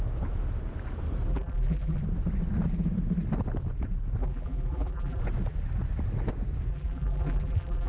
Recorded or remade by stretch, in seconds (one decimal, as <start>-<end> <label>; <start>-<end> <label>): 0.0-1.3 recorded; 1.3-2.0 remade; 2.0-4.2 recorded; 4.2-5.2 remade; 5.2-6.7 recorded; 6.7-7.9 remade